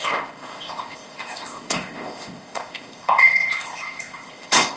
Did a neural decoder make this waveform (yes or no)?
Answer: yes